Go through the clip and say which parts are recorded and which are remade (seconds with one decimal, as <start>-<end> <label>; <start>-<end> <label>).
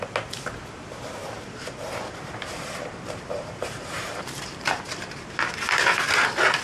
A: 0.0-1.2 recorded; 1.2-5.2 remade; 5.2-6.6 recorded